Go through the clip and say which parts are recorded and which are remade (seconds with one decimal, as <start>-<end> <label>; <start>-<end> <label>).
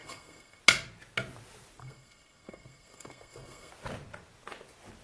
0.0-0.6 remade; 0.6-1.8 recorded; 1.8-3.7 remade; 3.7-5.0 recorded